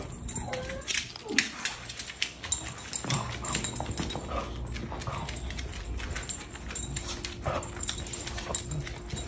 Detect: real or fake real